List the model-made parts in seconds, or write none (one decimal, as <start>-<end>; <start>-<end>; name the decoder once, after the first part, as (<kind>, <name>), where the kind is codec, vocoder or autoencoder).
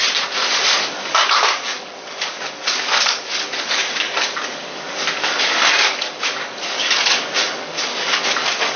0.6-8.8 (codec, DAC)